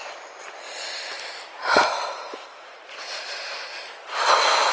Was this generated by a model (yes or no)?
no